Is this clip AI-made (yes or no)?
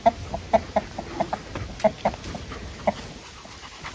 no